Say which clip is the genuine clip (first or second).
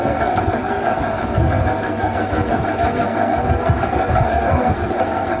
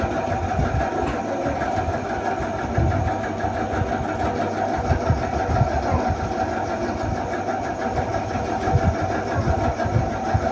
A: second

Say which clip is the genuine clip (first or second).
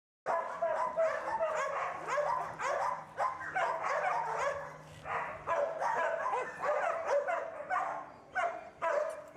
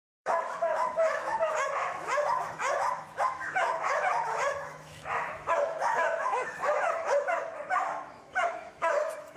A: first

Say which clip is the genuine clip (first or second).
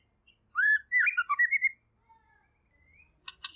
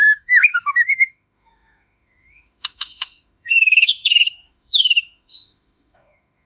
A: first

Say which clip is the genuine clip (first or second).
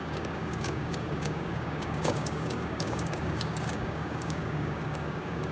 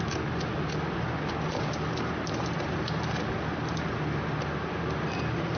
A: second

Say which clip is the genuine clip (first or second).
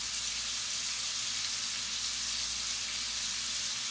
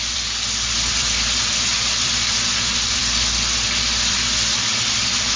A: first